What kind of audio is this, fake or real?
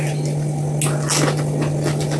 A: real